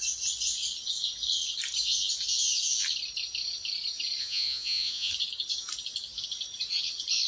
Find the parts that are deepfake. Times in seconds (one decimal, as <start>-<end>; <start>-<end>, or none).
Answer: 4.2-5.1